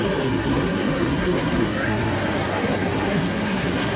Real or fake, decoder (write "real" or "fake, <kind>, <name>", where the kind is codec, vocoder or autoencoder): fake, codec, SNAC